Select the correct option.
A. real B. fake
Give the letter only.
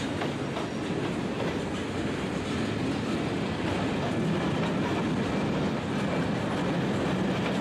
A